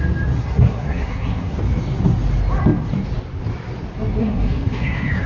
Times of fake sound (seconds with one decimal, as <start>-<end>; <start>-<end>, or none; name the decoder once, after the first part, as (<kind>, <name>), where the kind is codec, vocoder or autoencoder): 0.4-1.6 (codec, SNAC); 4.2-5.3